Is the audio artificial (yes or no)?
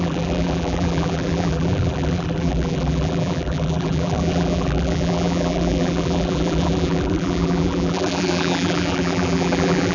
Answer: yes